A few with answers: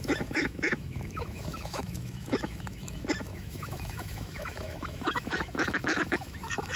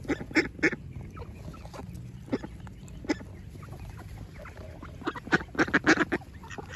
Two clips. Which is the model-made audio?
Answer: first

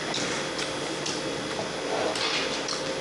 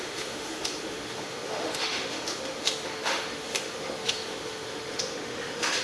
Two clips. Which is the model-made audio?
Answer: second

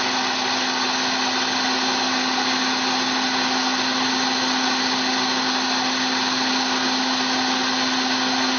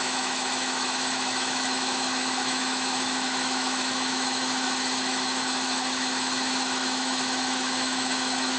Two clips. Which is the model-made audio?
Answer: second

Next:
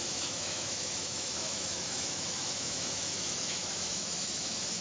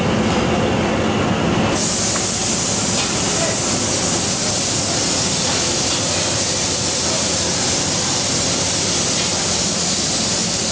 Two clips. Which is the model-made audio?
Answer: first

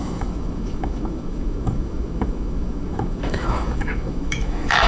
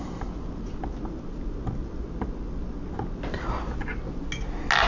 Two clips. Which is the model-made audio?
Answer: first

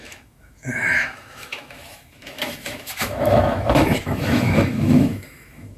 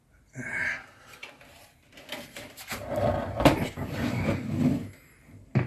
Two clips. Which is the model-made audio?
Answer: first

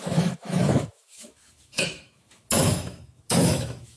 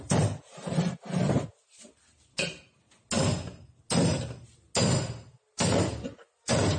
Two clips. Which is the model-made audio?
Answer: first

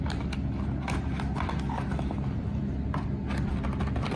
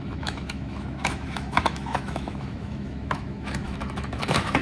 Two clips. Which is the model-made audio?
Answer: second